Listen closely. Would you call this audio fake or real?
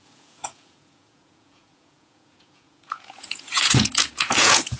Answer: fake